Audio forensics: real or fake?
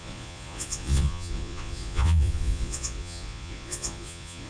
fake